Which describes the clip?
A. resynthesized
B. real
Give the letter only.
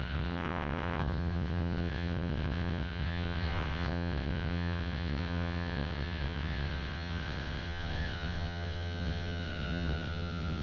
A